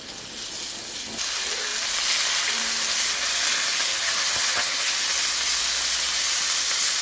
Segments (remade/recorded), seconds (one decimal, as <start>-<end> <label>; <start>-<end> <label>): 0.0-3.9 recorded; 3.9-4.9 remade; 4.9-7.0 recorded